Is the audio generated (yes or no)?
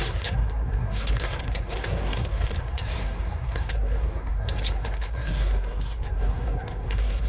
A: yes